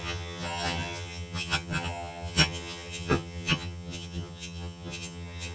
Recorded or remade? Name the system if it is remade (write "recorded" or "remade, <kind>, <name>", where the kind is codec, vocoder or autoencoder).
remade, vocoder, HiFi-GAN